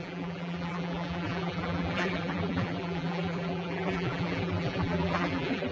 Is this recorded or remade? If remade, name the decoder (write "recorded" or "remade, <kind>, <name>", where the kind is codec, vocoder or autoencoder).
remade, vocoder, BigVGAN v2